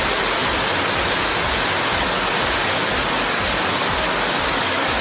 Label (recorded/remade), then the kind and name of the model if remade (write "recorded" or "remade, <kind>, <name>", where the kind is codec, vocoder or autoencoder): recorded